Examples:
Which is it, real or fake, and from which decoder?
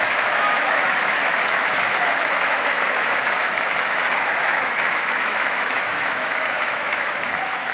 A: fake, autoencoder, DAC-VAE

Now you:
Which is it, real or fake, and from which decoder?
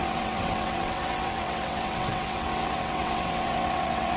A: fake, vocoder, WaveNeXt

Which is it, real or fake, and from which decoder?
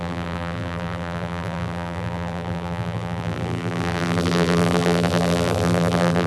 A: fake, vocoder, BigVGAN v2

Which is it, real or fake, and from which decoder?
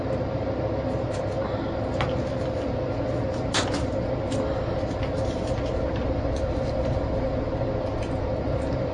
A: real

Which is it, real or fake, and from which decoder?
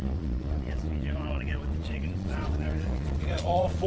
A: fake, vocoder, Vocos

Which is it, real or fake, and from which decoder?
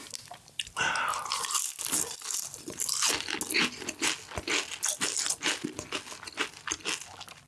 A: real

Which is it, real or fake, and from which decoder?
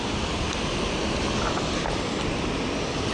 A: real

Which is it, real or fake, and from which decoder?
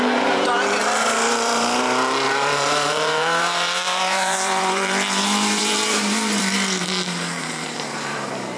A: fake, vocoder, BigVGAN v2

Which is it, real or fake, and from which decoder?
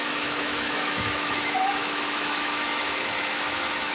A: fake, autoencoder, DAC-VAE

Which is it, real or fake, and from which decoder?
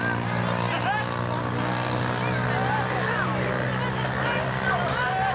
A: real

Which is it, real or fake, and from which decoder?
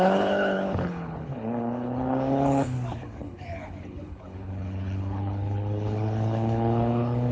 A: fake, codec, HILCodec